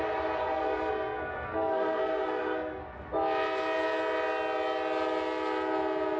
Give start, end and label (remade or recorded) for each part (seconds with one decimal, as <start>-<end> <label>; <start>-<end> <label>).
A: 0.0-0.4 recorded; 0.4-2.8 remade; 2.8-6.2 recorded